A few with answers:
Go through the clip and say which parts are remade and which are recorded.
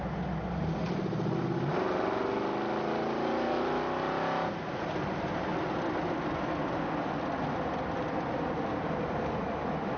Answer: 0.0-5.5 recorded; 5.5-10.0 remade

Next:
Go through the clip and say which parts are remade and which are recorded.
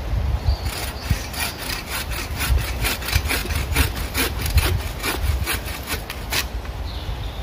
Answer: 0.0-0.8 recorded; 0.8-2.7 remade; 2.7-6.4 recorded; 6.4-6.9 remade; 6.9-7.4 recorded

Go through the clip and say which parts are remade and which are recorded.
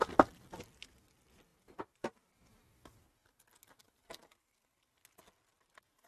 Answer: 0.0-1.5 recorded; 1.5-2.3 remade; 2.3-6.1 recorded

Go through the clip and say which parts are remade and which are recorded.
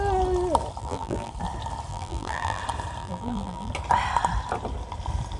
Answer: 0.0-0.8 recorded; 0.8-1.3 remade; 1.3-1.9 recorded; 1.9-2.6 remade; 2.6-3.0 recorded; 3.0-3.7 remade; 3.7-5.4 recorded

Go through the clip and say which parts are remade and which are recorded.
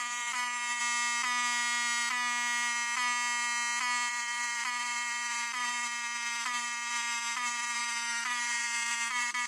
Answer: 0.0-0.8 remade; 0.8-4.1 recorded; 4.1-9.5 remade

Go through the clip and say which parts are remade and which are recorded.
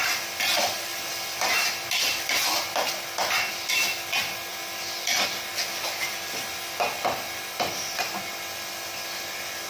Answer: 0.0-4.5 recorded; 4.5-5.5 remade; 5.5-9.7 recorded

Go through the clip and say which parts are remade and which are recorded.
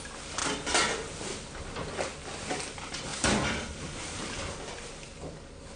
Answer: 0.0-3.1 recorded; 3.1-4.7 remade; 4.7-5.8 recorded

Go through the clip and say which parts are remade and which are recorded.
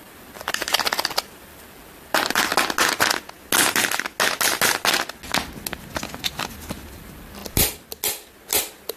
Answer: 0.0-2.5 remade; 2.5-6.9 recorded; 6.9-7.4 remade; 7.4-9.0 recorded